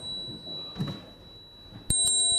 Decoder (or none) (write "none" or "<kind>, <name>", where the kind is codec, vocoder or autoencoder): none